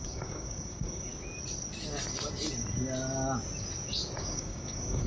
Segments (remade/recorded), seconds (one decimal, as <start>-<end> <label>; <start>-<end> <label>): 0.0-1.1 remade; 1.1-4.2 recorded; 4.2-5.1 remade